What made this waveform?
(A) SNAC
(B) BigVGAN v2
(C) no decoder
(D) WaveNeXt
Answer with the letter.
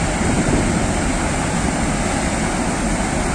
C